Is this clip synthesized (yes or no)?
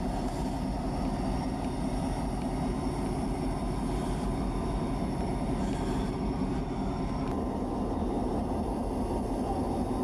no